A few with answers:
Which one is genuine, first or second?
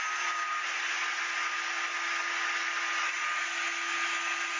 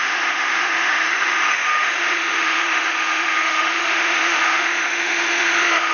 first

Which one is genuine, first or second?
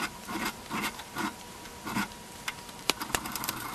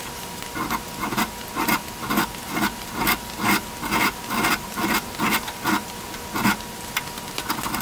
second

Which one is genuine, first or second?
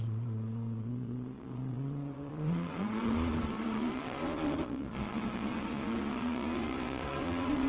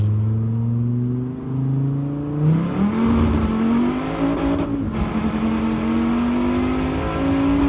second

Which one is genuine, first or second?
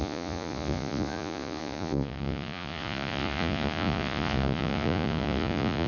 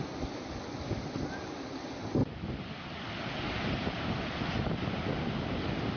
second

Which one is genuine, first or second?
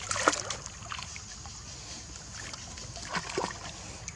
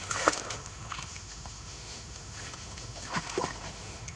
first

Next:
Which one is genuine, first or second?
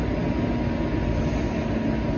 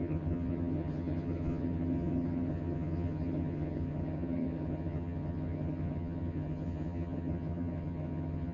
first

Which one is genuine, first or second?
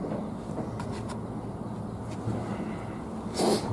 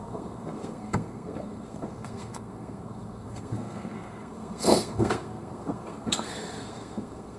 first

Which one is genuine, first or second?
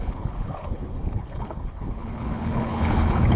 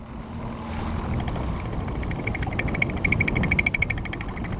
second